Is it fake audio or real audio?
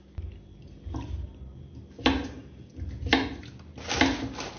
real